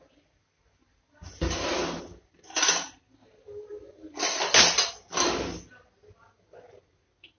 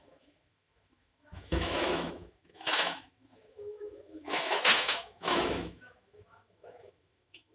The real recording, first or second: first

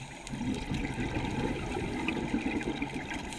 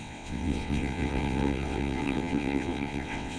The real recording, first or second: first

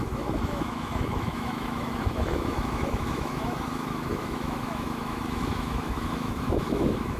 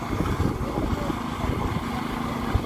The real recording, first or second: second